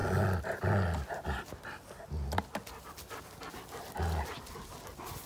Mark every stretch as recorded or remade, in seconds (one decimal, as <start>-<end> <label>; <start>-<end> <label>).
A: 0.0-5.3 recorded